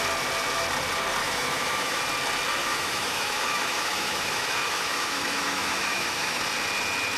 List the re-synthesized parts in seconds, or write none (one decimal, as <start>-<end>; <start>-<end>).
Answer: 1.2-2.0; 2.6-6.4